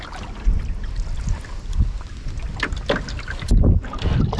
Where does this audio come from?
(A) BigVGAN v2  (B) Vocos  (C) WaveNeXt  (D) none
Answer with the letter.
D